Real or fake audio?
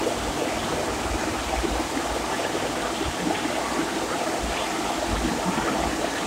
real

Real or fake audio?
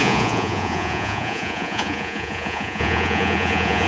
fake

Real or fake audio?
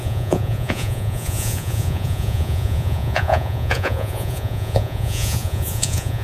fake